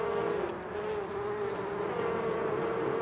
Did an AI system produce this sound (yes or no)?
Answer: no